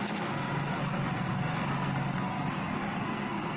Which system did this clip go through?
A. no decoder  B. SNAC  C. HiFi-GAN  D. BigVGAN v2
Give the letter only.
B